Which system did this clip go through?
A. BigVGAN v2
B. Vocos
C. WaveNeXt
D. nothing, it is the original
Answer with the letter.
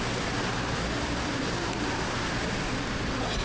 D